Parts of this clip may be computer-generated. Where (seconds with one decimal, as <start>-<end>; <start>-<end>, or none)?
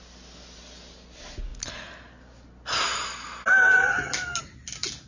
none